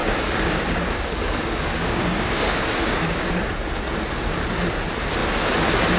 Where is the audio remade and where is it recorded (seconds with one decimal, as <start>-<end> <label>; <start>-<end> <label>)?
0.0-3.3 remade; 3.3-6.0 recorded